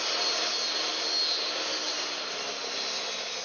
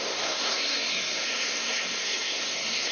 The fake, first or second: second